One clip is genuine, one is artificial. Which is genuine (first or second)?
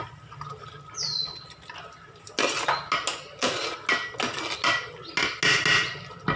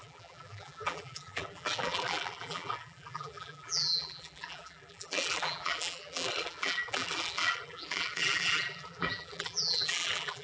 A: first